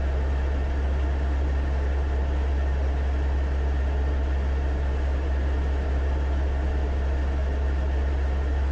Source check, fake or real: real